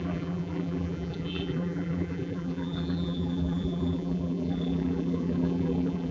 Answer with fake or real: fake